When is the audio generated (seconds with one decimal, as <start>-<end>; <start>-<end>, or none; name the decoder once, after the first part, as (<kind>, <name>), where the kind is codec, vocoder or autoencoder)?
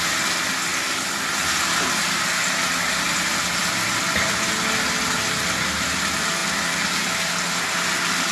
none